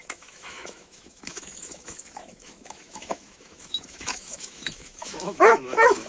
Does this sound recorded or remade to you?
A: remade